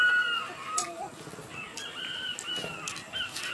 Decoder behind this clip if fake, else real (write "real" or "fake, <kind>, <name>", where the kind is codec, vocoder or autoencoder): real